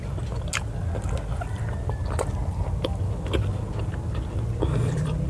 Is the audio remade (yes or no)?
no